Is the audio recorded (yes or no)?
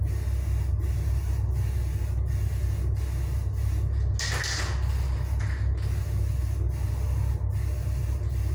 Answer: yes